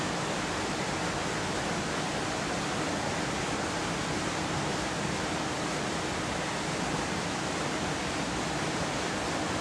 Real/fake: real